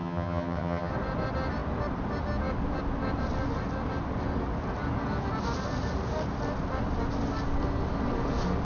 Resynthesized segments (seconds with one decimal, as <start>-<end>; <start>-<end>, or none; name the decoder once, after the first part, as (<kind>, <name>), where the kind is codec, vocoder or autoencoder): 0.0-0.9 (vocoder, HiFi-GAN)